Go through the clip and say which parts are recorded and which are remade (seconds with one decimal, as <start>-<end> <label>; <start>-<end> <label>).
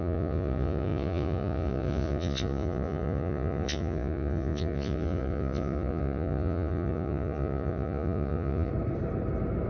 0.0-8.7 remade; 8.7-9.7 recorded